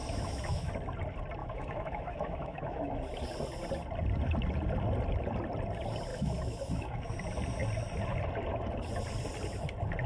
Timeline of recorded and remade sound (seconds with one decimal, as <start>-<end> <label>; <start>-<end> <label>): 0.0-0.7 remade; 0.7-1.4 recorded; 1.4-3.0 remade; 3.0-6.1 recorded; 6.1-7.1 remade; 7.1-10.1 recorded